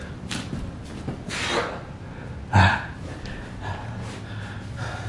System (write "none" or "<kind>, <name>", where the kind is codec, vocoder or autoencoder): none